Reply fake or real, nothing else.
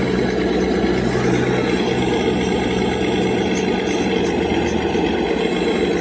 real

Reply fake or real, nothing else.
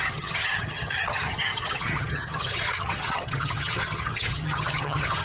fake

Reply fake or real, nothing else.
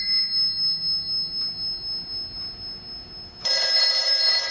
real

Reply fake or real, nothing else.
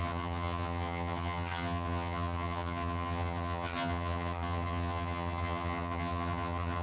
fake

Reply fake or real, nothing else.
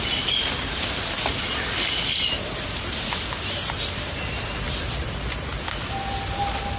real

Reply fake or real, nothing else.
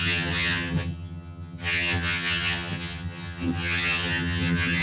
fake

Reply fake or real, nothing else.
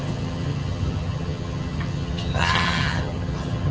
fake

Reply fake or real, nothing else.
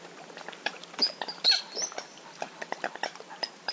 real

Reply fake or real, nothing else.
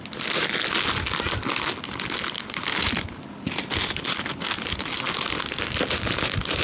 real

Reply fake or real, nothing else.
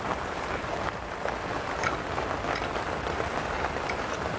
real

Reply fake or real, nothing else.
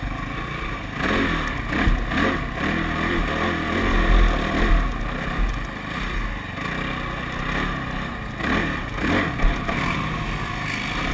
real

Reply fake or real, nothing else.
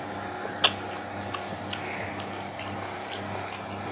real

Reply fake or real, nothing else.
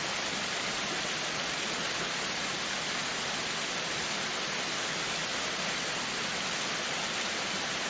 real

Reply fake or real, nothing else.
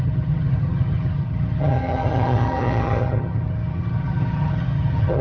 fake